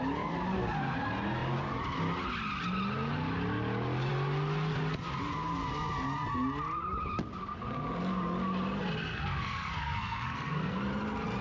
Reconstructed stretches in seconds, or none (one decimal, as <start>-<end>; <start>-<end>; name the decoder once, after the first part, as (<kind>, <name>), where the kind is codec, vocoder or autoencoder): 9.1-10.8 (codec, SNAC)